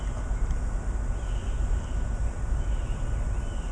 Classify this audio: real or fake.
real